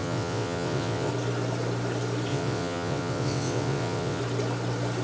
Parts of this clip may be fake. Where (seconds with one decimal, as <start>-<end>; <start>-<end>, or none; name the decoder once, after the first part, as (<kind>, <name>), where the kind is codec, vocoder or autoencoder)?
0.0-1.1 (vocoder, WaveNeXt); 2.3-4.2